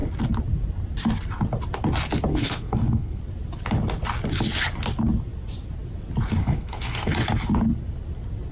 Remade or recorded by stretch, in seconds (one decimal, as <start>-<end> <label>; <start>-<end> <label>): 0.0-2.3 recorded; 2.3-3.2 remade; 3.2-6.4 recorded; 6.4-7.1 remade; 7.1-8.5 recorded